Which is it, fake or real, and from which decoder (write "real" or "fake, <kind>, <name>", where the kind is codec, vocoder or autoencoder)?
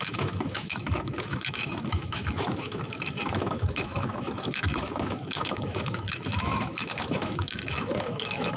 fake, autoencoder, DAC-VAE